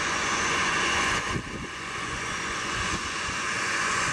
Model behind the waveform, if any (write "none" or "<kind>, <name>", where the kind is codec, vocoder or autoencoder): vocoder, Vocos